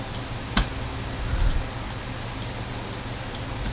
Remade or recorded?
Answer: recorded